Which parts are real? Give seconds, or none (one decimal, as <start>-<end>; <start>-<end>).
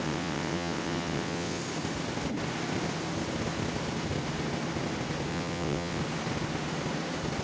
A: 1.6-5.3; 6.0-7.4